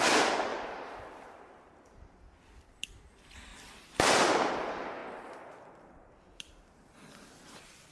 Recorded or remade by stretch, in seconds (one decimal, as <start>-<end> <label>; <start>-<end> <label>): 0.0-0.5 recorded; 0.5-2.2 remade; 2.2-3.5 recorded; 3.5-4.5 remade; 4.5-7.9 recorded